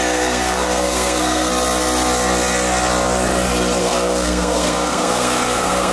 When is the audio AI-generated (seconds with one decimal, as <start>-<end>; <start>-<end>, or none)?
0.0-1.5; 3.8-5.9

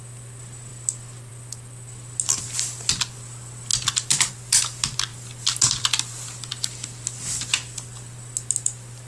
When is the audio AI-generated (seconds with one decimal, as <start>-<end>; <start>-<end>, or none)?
none

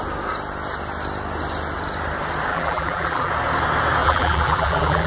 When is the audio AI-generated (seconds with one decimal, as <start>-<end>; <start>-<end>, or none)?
2.5-3.3; 4.0-5.1

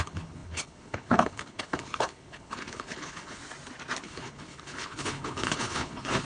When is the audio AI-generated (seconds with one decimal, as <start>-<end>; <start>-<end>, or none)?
0.0-3.4; 4.0-6.2

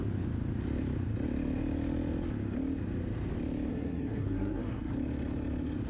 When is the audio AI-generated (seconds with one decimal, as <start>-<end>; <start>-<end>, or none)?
3.7-4.9

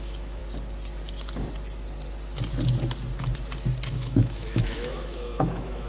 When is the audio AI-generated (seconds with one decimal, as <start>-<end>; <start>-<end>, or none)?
0.0-0.4; 3.9-5.9

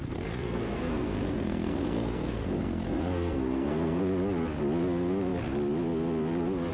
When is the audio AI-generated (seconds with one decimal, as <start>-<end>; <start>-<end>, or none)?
0.0-4.0

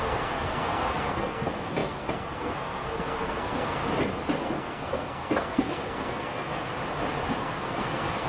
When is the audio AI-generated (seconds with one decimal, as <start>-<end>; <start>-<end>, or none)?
0.0-3.8; 4.4-6.7; 7.4-8.3